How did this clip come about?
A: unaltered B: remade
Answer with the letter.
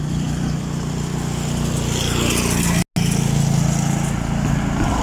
A